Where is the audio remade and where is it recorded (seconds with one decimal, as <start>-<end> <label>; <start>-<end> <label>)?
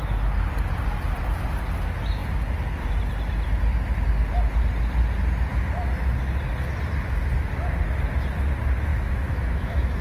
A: 0.0-8.9 recorded; 8.9-10.0 remade